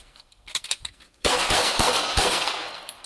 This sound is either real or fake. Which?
fake